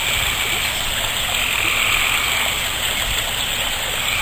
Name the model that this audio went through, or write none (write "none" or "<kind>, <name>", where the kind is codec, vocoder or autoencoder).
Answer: none